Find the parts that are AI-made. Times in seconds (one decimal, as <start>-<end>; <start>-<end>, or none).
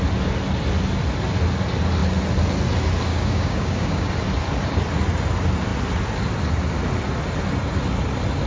3.1-4.1